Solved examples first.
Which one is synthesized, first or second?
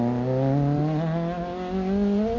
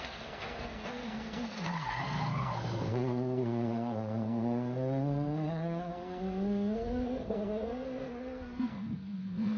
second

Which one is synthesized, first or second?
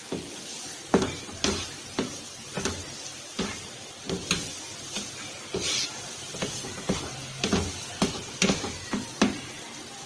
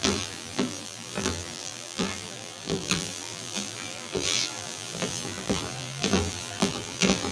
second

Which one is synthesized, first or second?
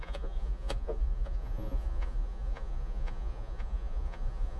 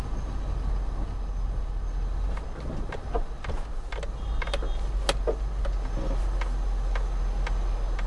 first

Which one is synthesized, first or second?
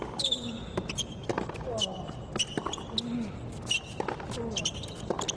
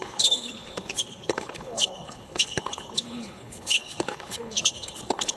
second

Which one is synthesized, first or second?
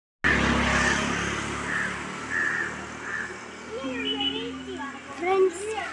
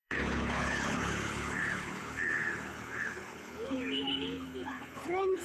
second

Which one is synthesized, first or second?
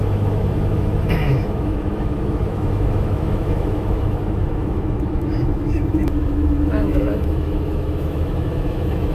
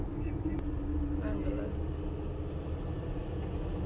first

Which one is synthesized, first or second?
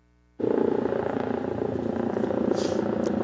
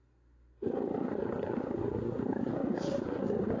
second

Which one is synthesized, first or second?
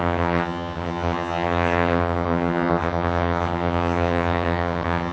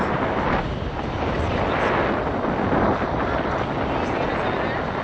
first